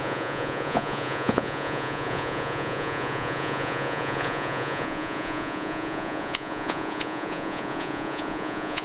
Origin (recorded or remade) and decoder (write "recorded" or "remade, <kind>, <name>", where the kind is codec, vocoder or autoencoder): remade, vocoder, Vocos